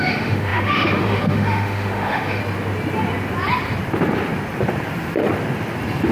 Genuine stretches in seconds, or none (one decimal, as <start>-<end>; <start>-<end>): 2.4-6.1